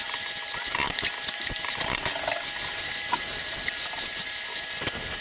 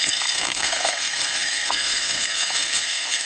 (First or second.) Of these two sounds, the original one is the first